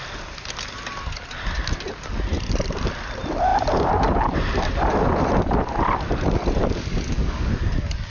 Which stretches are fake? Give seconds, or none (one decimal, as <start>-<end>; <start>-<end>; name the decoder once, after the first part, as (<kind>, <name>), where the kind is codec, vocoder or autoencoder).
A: 6.6-7.5 (codec, DAC)